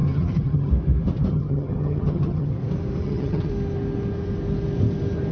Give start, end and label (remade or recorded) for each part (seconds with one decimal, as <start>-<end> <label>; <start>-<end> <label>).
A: 0.0-0.7 remade; 0.7-1.3 recorded; 1.3-2.5 remade; 2.5-3.0 recorded; 3.0-3.5 remade; 3.5-5.3 recorded